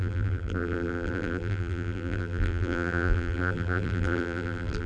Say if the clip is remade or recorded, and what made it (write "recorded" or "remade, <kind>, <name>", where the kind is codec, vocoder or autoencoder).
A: remade, vocoder, BigVGAN v2